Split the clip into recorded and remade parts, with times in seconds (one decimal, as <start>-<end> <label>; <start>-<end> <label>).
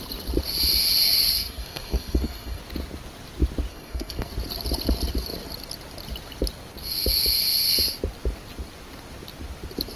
0.0-1.2 recorded; 1.2-2.6 remade; 2.6-3.7 recorded; 3.7-4.3 remade; 4.3-10.0 recorded